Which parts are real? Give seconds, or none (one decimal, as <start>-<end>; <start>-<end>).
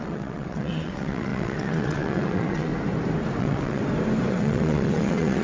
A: 2.7-3.4; 3.8-4.3